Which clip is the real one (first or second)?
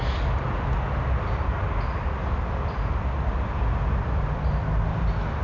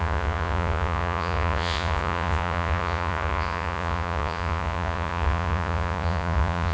first